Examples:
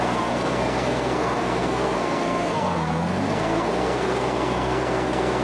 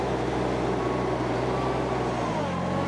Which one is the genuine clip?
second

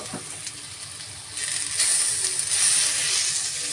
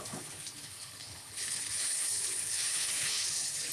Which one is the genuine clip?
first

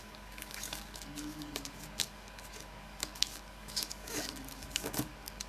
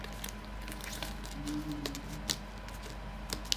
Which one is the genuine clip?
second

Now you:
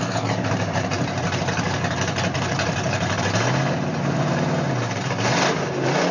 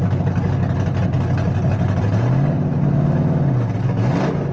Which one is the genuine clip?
second